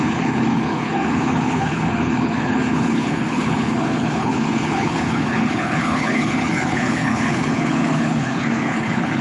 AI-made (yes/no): yes